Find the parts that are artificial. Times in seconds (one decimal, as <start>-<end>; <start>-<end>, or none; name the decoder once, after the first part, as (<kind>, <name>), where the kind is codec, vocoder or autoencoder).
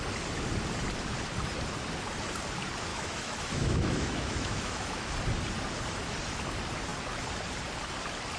2.9-5.1 (autoencoder, DAC-VAE)